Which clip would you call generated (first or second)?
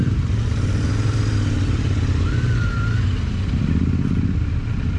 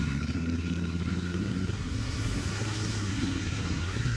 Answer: second